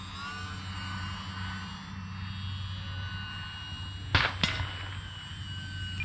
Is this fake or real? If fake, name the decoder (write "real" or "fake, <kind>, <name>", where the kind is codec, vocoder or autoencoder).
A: real